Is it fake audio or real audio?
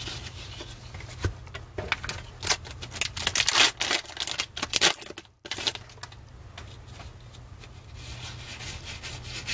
real